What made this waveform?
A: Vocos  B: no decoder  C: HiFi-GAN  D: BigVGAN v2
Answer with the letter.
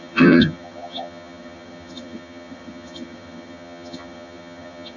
C